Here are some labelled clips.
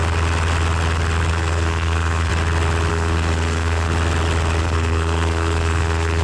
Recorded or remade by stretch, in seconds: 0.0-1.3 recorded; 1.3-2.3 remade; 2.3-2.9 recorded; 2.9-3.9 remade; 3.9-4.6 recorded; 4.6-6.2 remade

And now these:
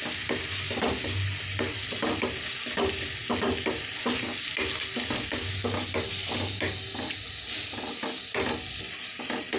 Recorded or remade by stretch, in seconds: 0.0-9.6 recorded